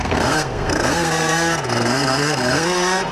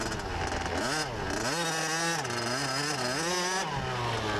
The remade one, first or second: first